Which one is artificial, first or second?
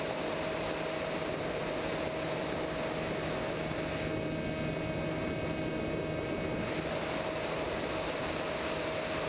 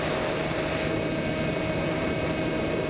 second